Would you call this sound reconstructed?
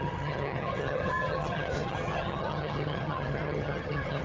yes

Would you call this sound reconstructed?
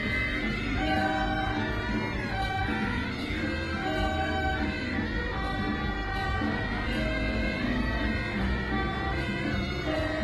no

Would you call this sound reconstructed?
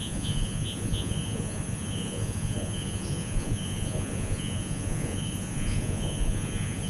yes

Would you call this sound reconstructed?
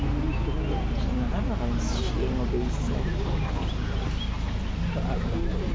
no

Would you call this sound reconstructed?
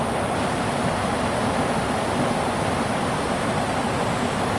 no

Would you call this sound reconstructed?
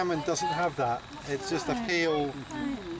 no